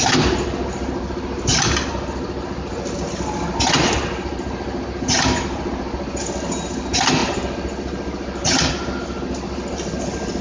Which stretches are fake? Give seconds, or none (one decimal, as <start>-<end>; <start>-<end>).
none